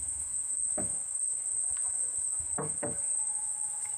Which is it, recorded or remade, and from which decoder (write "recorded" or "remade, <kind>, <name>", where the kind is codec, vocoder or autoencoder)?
remade, autoencoder, DAC-VAE